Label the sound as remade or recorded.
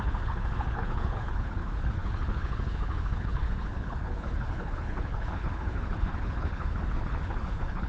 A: remade